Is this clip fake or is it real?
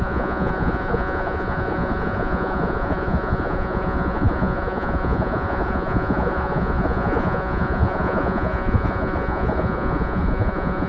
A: fake